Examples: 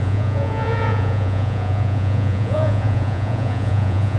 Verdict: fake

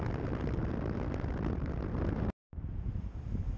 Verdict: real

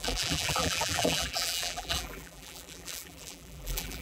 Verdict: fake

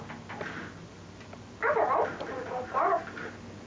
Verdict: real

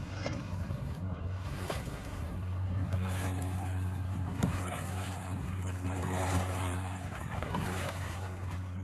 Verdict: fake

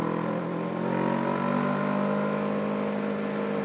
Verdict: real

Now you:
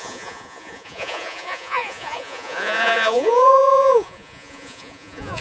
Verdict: fake